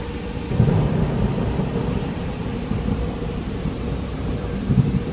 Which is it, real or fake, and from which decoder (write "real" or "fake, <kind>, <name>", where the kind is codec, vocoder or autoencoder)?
fake, vocoder, BigVGAN v2